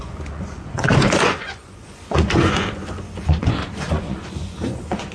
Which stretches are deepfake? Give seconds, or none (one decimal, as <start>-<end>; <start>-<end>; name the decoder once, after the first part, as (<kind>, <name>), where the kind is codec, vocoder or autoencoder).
0.0-5.1 (vocoder, Vocos)